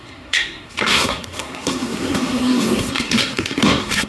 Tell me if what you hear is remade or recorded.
remade